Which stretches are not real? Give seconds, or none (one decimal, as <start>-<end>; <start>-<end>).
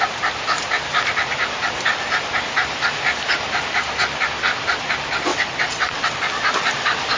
5.3-6.1